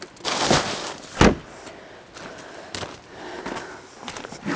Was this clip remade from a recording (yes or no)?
no